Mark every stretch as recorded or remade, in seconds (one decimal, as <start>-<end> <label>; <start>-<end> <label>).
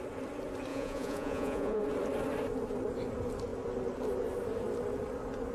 0.0-0.7 recorded; 0.7-1.8 remade; 1.8-5.5 recorded